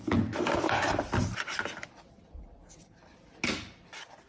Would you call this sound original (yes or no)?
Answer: yes